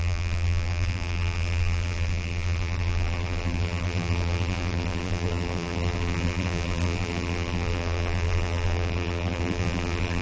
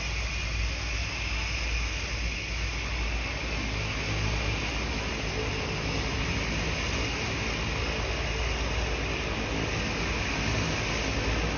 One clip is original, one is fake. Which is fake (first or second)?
first